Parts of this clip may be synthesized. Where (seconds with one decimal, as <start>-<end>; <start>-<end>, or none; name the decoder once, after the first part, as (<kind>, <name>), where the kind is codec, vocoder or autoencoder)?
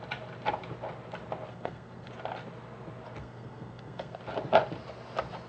1.5-2.1 (codec, SNAC); 3.2-4.2